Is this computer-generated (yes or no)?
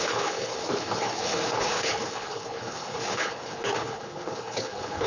yes